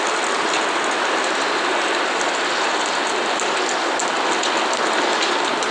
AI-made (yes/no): no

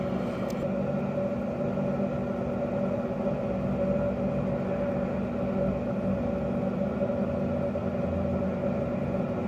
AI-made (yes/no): no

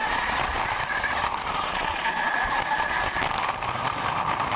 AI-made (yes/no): no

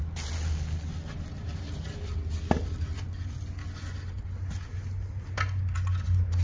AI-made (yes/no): no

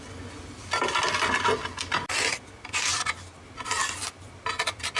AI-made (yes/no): no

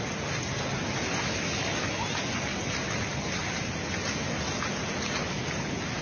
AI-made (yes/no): no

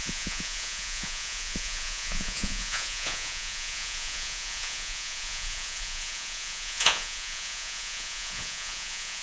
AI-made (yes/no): yes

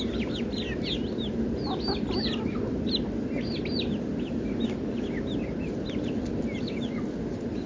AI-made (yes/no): no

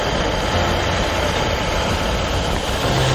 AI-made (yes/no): no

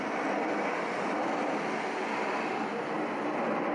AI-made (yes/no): no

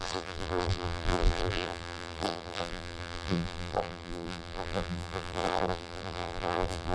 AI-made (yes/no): yes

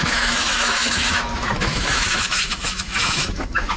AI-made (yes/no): yes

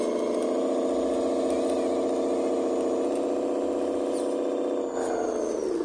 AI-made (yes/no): no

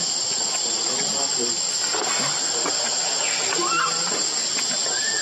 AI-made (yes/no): no